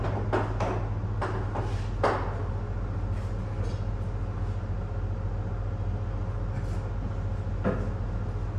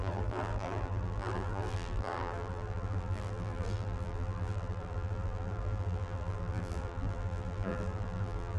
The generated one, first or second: second